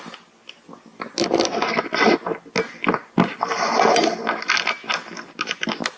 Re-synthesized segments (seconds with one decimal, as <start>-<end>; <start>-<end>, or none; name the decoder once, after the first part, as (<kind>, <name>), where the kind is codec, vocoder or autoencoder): none